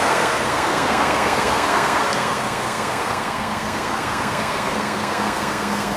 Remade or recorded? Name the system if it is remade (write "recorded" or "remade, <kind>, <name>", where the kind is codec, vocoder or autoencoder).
remade, codec, SNAC